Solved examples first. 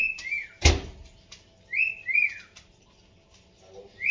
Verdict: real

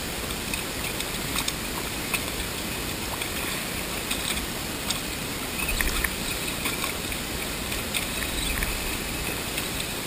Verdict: real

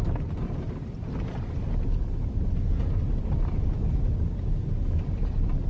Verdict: real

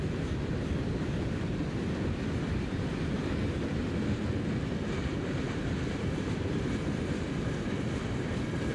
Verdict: real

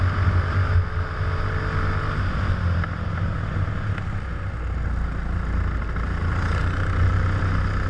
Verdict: real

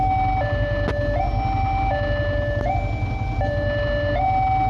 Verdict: real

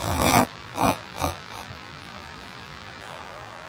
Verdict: fake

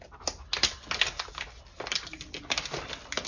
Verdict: real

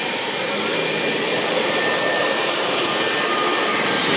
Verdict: real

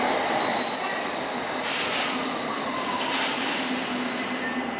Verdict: real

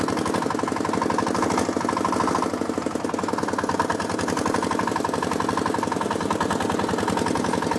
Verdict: real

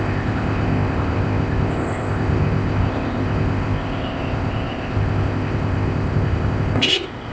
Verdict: fake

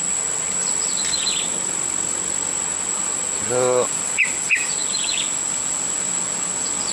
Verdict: real